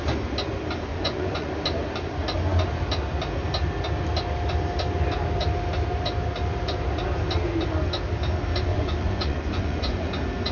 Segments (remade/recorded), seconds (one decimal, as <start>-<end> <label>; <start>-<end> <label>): 0.0-0.9 recorded; 0.9-1.5 remade; 1.5-8.7 recorded; 8.7-10.1 remade; 10.1-10.5 recorded

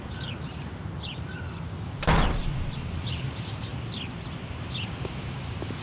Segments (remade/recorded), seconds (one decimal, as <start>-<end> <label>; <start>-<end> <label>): 0.0-0.7 remade; 0.7-2.4 recorded; 2.4-3.7 remade; 3.7-5.8 recorded

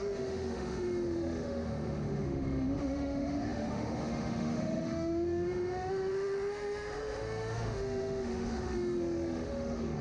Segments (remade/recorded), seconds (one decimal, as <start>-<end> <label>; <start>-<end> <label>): 0.0-10.0 remade

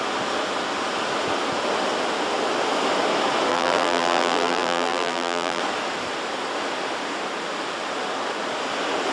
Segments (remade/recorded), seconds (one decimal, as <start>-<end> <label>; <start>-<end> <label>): 0.0-3.5 recorded; 3.5-5.6 remade; 5.6-9.1 recorded